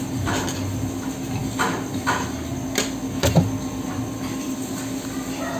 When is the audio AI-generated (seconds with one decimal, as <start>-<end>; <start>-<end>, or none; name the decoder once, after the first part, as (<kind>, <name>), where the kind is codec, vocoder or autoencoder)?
none